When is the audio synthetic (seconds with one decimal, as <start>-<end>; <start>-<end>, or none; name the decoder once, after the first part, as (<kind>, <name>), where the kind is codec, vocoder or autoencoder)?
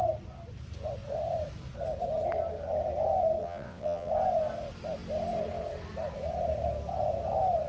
3.4-4.1 (vocoder, WaveNeXt)